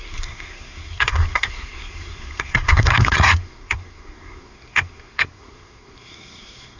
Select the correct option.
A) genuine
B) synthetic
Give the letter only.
B